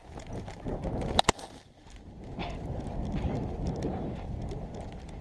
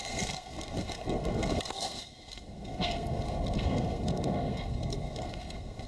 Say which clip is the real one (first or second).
first